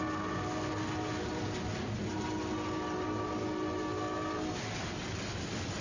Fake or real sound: real